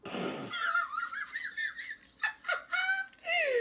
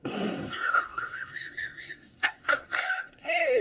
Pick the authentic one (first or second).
first